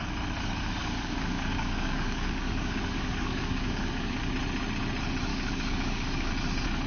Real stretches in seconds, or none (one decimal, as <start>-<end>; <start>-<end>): 0.0-0.8; 4.3-5.3; 6.3-6.9